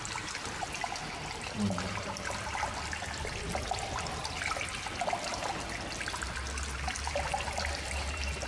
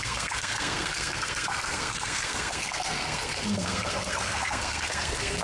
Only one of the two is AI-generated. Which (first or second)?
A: second